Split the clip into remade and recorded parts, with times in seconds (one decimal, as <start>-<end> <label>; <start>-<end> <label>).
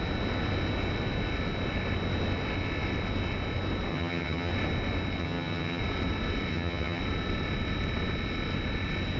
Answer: 0.0-3.9 recorded; 3.9-4.5 remade; 4.5-5.2 recorded; 5.2-5.8 remade; 5.8-6.5 recorded; 6.5-7.0 remade; 7.0-9.2 recorded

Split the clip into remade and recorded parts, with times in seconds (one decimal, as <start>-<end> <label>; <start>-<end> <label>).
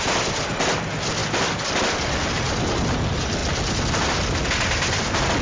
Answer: 0.0-5.4 recorded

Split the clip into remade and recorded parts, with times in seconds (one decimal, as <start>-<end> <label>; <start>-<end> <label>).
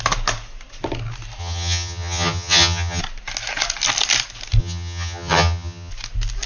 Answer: 0.0-1.4 recorded; 1.4-3.0 remade; 3.0-4.6 recorded; 4.6-5.9 remade; 5.9-6.5 recorded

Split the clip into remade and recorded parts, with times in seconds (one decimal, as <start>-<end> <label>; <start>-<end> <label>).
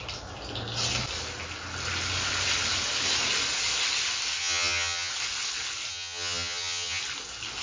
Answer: 0.0-4.4 recorded; 4.4-5.1 remade; 5.1-5.9 recorded; 5.9-7.0 remade; 7.0-7.6 recorded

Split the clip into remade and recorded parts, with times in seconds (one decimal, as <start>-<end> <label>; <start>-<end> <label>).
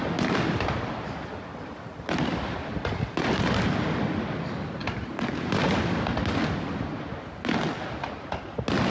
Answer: 0.0-8.9 recorded